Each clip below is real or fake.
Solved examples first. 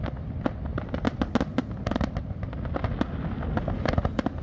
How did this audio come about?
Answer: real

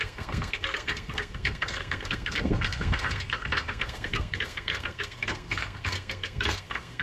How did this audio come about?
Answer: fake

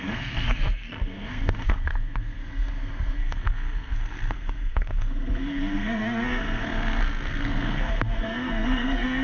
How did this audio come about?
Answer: fake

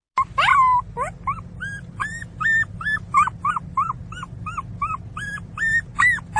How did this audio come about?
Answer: real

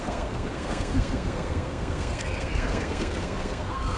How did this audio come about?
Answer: fake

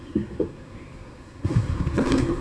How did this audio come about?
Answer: fake